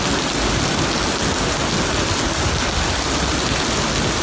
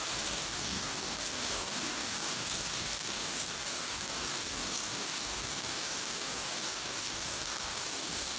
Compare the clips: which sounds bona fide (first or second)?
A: first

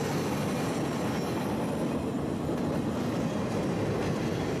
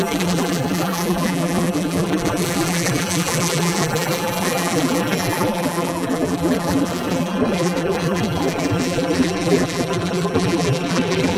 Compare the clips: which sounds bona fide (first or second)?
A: first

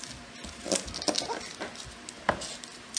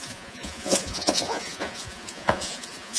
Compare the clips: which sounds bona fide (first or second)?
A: first